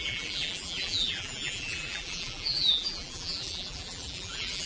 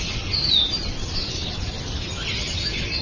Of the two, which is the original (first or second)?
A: second